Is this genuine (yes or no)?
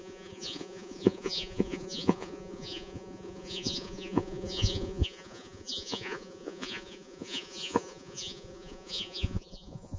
no